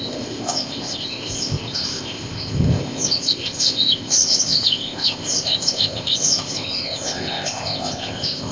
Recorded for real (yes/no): no